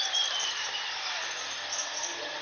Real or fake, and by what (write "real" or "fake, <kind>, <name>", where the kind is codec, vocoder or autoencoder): real